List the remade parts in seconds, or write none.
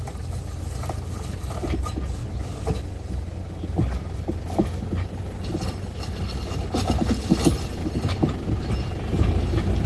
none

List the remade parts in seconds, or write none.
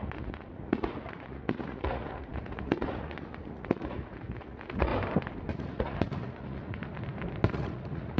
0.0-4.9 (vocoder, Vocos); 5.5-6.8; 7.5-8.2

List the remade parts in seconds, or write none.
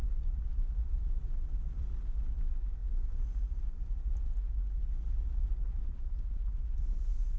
none